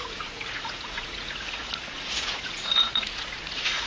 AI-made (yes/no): yes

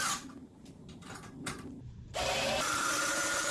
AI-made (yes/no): yes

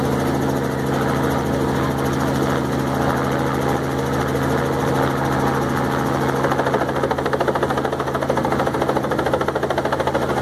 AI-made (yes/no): no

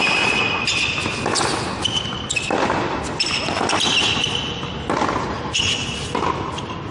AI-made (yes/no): no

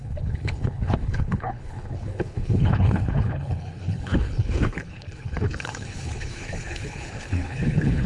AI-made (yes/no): yes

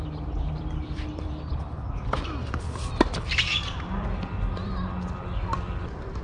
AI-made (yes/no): yes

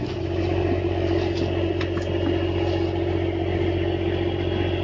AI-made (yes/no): no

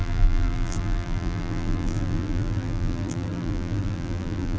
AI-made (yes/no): yes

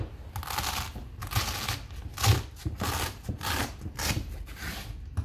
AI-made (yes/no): no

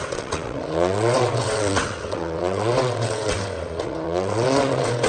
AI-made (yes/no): yes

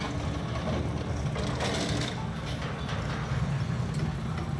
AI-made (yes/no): no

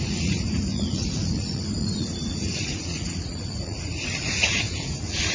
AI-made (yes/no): yes